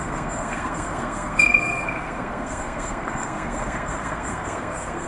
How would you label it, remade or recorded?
remade